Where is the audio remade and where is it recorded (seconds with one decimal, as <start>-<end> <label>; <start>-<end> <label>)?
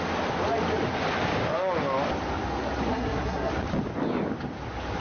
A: 0.0-2.9 recorded; 2.9-3.5 remade; 3.5-5.0 recorded